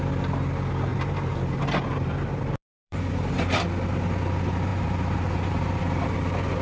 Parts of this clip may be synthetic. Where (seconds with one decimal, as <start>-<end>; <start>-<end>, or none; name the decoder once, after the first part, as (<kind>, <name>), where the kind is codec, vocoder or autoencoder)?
0.9-3.0 (vocoder, BigVGAN v2); 4.7-5.8